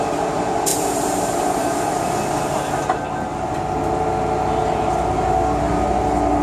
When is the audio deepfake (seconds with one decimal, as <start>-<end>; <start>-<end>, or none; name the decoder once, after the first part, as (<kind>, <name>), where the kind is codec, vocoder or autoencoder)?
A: 0.7-2.1 (vocoder, BigVGAN v2)